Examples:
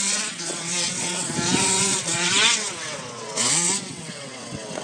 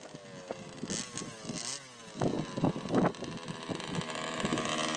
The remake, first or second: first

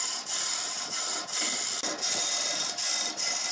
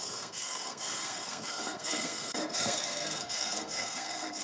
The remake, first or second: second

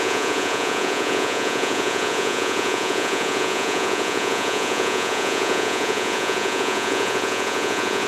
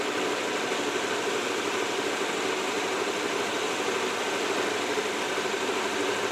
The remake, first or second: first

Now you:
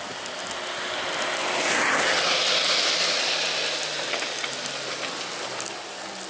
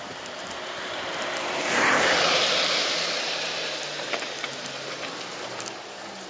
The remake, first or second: second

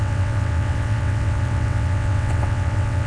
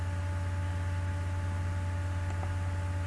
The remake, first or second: first